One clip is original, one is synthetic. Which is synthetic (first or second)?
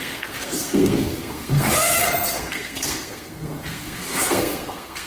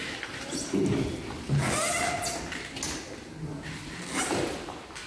first